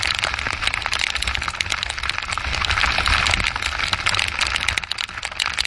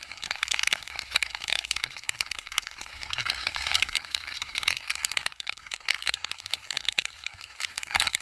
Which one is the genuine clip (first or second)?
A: first